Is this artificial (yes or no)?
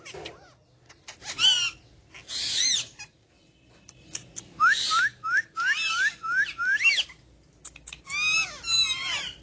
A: no